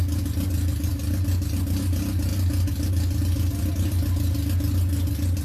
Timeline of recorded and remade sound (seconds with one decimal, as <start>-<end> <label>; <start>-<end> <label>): 0.0-5.4 recorded